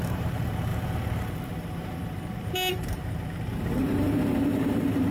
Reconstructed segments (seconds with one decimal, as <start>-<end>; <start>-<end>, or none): 0.0-5.1